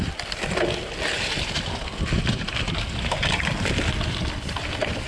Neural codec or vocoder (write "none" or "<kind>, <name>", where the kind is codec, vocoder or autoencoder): none